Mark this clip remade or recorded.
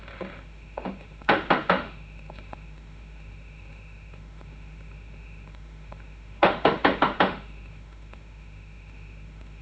remade